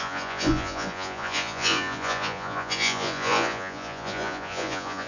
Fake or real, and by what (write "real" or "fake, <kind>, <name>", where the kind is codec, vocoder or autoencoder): fake, vocoder, Vocos